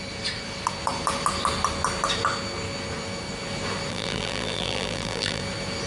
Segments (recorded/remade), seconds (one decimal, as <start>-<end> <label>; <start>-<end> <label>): 0.0-3.9 recorded; 3.9-5.4 remade; 5.4-5.9 recorded